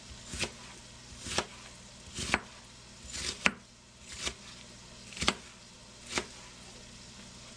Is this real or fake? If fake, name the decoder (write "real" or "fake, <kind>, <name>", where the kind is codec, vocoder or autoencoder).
real